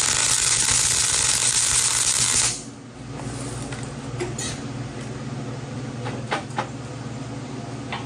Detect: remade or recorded recorded